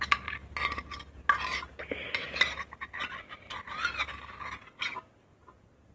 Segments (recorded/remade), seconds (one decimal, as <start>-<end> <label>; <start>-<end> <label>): 0.0-5.9 recorded